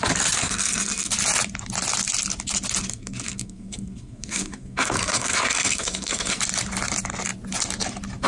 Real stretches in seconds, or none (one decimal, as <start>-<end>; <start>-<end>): 0.0-0.4; 1.1-2.8; 6.4-8.3